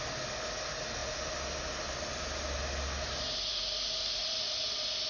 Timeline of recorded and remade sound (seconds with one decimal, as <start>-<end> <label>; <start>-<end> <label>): 0.0-5.1 recorded